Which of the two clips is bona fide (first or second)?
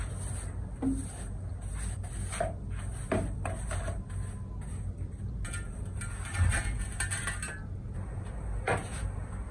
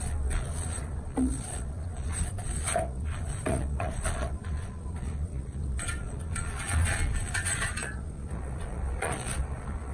first